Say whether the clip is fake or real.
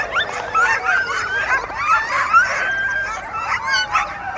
fake